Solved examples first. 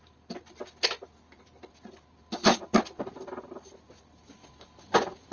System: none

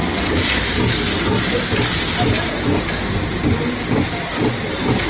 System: none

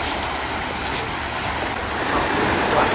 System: none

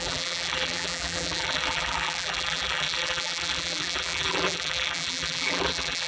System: vocoder, BigVGAN v2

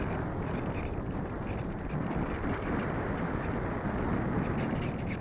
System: none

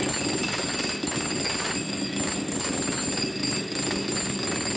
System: none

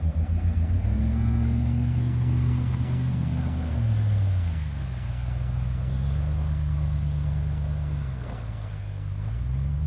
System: codec, SNAC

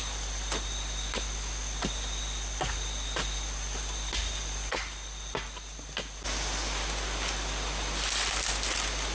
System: none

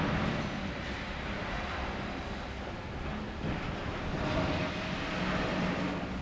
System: none